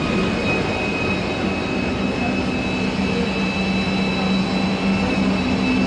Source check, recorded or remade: recorded